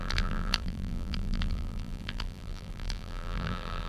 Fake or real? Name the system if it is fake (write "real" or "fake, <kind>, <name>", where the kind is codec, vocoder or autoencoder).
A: fake, vocoder, BigVGAN v2